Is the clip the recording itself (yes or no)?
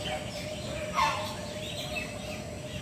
yes